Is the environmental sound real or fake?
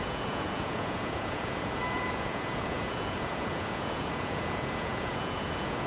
fake